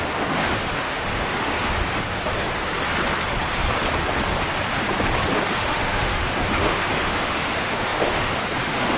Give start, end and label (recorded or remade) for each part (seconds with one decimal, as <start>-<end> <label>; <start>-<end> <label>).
0.0-2.7 remade; 2.7-5.5 recorded; 5.5-9.0 remade